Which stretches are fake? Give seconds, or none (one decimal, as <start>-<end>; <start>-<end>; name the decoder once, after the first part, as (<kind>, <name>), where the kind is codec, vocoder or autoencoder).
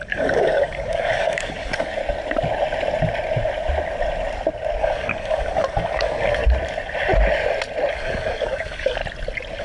0.0-2.0 (codec, DAC); 4.8-6.4; 7.9-9.0